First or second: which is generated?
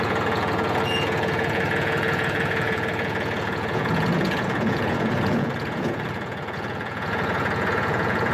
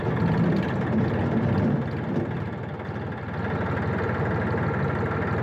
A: first